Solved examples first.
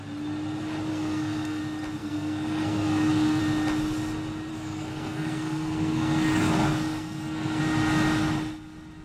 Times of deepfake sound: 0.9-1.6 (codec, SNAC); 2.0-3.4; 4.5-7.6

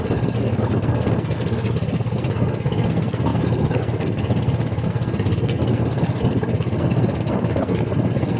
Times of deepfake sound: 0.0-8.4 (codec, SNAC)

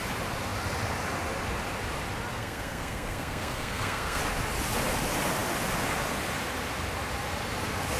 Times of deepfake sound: 2.3-4.2 (codec, SNAC)